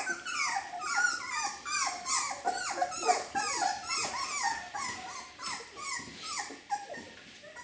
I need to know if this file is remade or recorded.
recorded